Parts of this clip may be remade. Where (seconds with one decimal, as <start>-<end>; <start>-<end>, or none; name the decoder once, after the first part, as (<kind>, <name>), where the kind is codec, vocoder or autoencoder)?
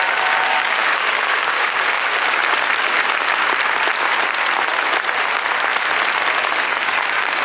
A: 0.0-2.4 (codec, DAC); 6.8-7.4